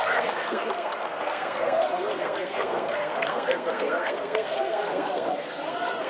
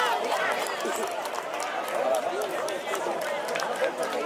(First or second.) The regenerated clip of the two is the first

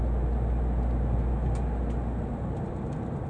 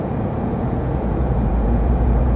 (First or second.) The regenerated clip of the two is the second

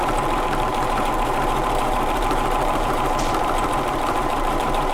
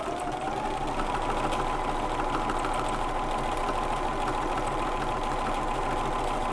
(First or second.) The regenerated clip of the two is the first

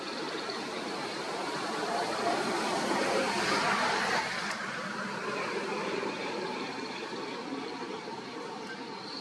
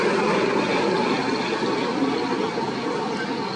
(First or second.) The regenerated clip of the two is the first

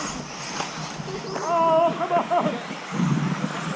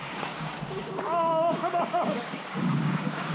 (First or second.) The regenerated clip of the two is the second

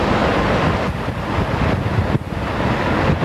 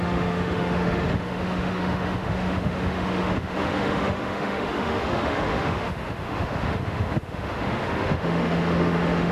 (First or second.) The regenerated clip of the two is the second